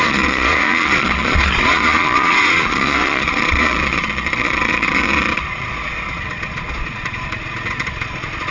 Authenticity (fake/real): fake